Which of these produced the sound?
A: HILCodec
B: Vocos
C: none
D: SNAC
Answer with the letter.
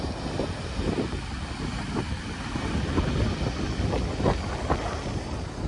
C